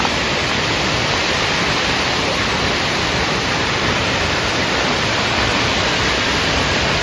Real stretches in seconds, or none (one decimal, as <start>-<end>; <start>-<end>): none

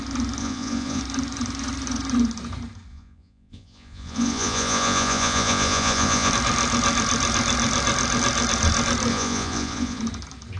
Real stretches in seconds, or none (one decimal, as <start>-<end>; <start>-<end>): 0.0-0.4; 1.0-2.9; 6.3-9.1; 10.0-10.6

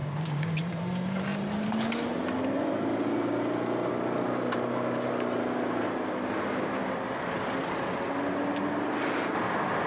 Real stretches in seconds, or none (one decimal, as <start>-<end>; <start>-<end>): 0.6-9.9